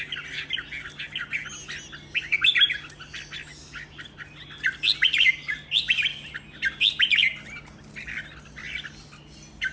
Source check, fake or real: real